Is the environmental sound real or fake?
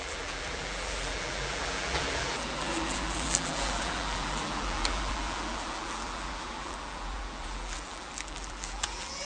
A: fake